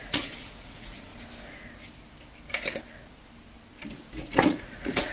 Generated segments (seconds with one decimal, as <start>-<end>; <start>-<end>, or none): 0.0-1.1; 4.2-5.1